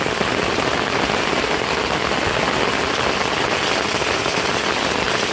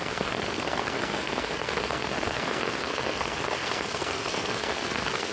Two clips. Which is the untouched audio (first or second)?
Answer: first